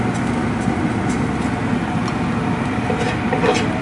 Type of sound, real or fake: real